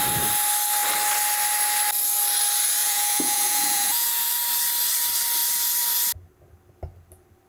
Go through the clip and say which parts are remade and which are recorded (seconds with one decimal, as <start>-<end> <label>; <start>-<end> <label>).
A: 0.0-2.8 recorded; 2.8-4.3 remade; 4.3-7.5 recorded